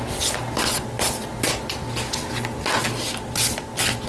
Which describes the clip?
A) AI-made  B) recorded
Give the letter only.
B